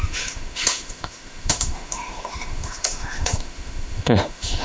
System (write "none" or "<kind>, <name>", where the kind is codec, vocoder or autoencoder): autoencoder, DAC-VAE